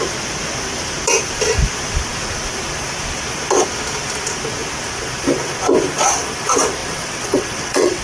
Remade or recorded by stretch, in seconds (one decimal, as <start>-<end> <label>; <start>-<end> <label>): 0.0-6.8 recorded; 6.8-8.0 remade